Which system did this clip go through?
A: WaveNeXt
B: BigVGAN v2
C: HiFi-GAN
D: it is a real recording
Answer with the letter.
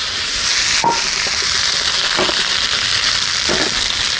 D